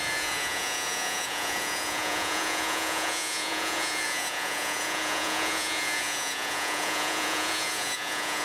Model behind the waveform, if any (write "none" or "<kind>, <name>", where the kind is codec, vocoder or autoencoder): vocoder, Vocos